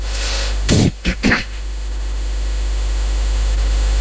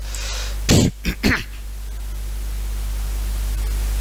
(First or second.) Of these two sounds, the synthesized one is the first